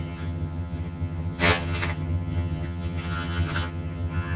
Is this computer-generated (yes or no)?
yes